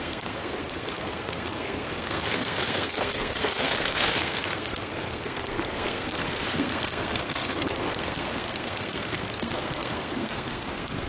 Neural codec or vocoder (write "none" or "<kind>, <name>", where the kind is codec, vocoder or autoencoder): codec, SNAC